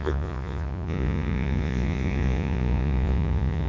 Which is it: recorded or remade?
remade